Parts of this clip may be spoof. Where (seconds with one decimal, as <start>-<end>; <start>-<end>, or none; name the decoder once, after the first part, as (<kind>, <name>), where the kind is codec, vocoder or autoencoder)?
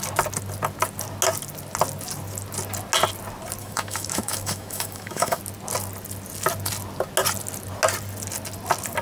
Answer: 3.6-5.4 (autoencoder, DAC-VAE)